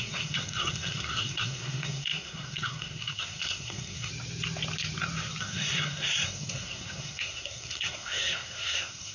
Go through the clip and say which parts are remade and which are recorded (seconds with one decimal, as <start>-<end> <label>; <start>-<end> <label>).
0.0-4.1 remade; 4.1-5.4 recorded; 5.4-9.1 remade